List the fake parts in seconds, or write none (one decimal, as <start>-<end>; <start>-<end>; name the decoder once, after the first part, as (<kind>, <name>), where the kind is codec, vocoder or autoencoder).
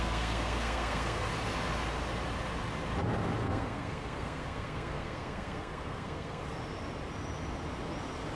0.0-1.3 (codec, SNAC); 3.4-6.4